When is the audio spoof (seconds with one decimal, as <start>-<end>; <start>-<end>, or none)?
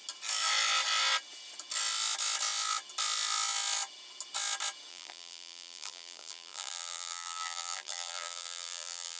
4.9-9.2